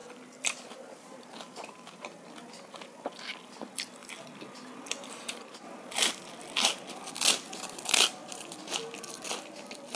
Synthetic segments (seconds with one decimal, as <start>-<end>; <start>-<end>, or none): 0.0-2.5; 8.2-8.7